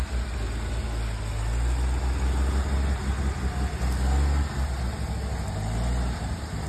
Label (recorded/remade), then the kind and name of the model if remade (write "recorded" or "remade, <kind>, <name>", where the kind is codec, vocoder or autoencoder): recorded